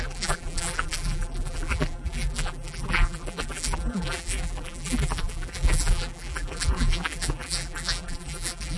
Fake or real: fake